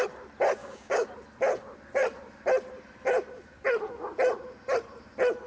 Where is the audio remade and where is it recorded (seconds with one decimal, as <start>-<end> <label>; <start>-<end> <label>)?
0.0-0.6 recorded; 0.6-1.1 remade; 1.1-5.5 recorded